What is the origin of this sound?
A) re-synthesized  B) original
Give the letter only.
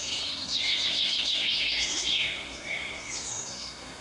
A